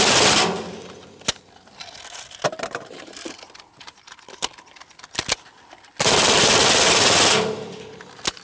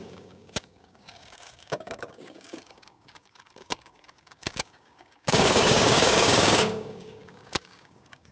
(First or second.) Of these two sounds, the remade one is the second